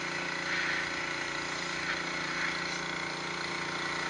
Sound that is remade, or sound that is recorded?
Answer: recorded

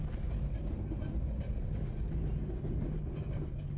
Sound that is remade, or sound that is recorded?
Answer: recorded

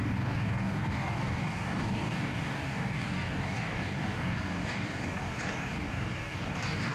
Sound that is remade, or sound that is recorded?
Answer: remade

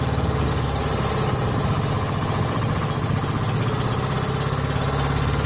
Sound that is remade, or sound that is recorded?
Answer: recorded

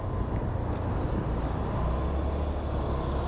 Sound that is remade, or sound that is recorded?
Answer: recorded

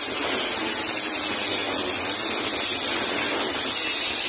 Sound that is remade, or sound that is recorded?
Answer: recorded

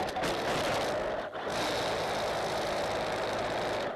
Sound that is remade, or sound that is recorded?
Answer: recorded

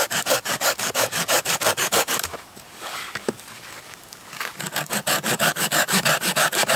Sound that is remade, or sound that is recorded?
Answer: remade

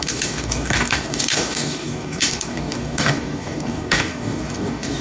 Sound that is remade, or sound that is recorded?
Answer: remade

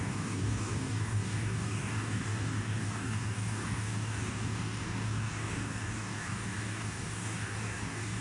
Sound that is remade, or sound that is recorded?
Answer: remade